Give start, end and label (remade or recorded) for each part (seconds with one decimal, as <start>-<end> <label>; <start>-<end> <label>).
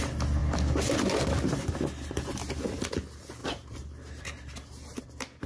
0.0-3.4 recorded; 3.4-5.0 remade; 5.0-5.5 recorded